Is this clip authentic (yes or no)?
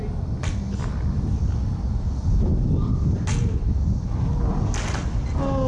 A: yes